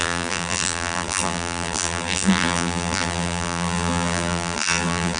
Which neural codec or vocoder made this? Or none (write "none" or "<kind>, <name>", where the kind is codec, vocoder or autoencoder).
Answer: vocoder, BigVGAN v2